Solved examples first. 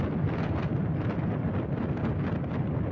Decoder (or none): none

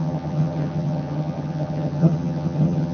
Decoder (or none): vocoder, HiFi-GAN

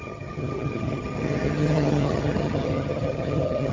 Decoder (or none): vocoder, HiFi-GAN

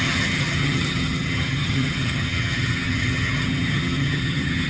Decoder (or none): vocoder, HiFi-GAN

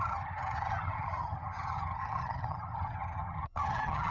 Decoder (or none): vocoder, HiFi-GAN